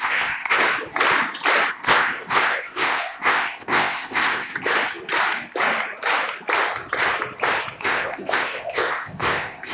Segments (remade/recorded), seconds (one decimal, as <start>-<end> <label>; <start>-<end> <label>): 0.0-0.6 remade; 0.6-1.7 recorded; 1.7-4.5 remade; 4.5-7.8 recorded; 7.8-9.7 remade